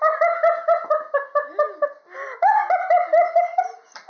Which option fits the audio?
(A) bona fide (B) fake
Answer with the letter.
A